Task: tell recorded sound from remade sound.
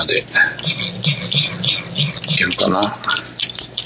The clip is recorded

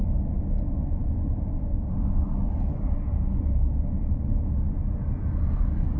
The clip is recorded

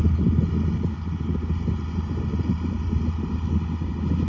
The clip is recorded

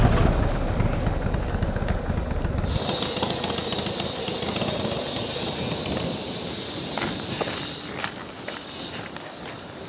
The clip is recorded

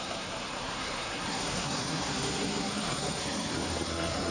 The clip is remade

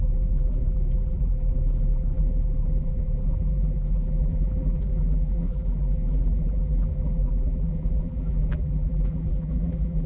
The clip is remade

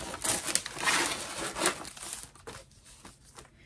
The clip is recorded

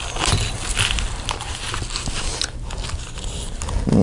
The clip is recorded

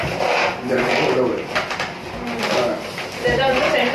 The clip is recorded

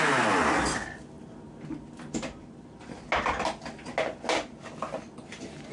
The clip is recorded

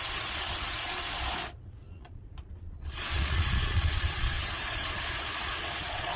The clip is remade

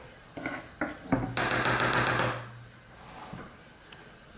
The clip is recorded